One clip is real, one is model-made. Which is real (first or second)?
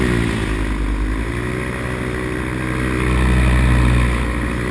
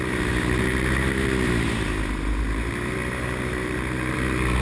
first